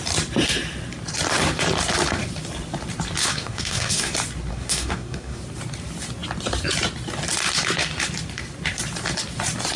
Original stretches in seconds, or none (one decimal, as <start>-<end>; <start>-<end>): 0.0-3.2; 4.1-4.5; 5.4-9.8